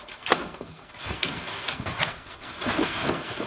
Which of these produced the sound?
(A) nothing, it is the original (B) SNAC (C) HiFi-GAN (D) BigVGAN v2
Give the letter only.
B